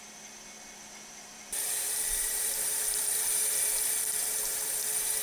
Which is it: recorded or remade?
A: remade